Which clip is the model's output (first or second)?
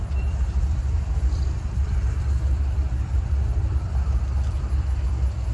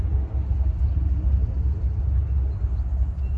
first